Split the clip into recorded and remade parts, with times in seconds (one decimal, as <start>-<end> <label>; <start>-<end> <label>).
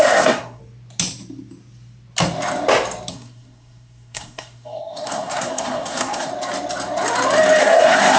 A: 0.0-0.6 remade; 0.6-3.1 recorded; 3.1-6.3 remade; 6.3-7.6 recorded; 7.6-8.2 remade